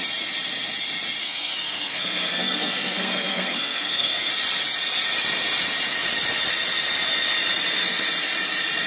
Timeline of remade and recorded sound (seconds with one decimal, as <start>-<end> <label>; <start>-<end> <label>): 0.0-1.2 recorded; 1.2-4.3 remade; 4.3-8.9 recorded